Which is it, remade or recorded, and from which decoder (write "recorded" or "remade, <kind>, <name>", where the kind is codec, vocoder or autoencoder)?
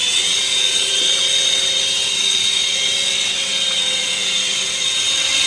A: remade, vocoder, WaveNeXt